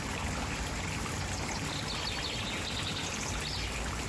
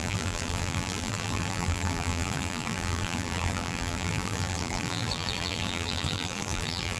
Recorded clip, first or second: first